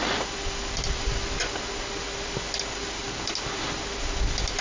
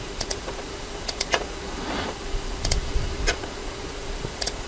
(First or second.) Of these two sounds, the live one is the first